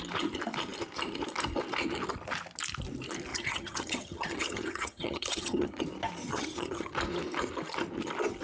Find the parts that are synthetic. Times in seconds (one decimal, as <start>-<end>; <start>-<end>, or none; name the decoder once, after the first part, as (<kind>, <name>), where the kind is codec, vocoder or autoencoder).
3.3-5.8 (vocoder, HiFi-GAN); 6.3-6.9